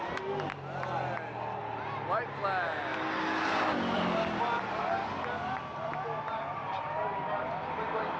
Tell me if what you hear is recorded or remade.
recorded